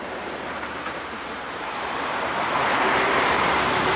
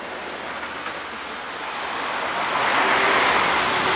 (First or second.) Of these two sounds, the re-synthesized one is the first